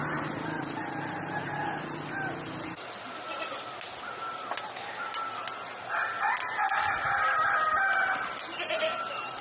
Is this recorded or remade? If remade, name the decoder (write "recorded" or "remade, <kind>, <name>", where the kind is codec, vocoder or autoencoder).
recorded